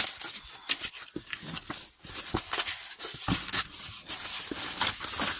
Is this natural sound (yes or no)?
yes